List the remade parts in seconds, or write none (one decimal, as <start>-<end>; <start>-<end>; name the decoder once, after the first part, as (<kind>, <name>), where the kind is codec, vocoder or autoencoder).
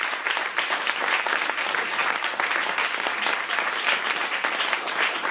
0.0-2.0 (vocoder, BigVGAN v2); 4.0-5.3